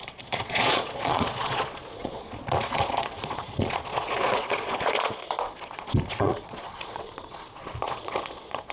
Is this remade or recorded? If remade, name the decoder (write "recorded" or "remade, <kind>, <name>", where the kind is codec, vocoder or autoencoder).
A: remade, vocoder, Vocos